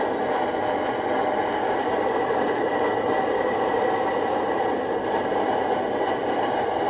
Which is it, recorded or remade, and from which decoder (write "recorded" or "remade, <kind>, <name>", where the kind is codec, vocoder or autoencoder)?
recorded